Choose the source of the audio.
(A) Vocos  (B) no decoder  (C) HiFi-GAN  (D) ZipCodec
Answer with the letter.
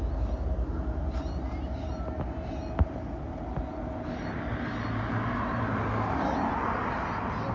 B